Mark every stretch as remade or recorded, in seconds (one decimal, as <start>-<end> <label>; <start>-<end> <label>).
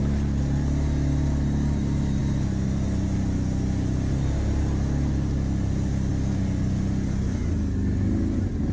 0.0-8.7 recorded